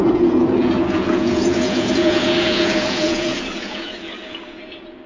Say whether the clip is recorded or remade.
remade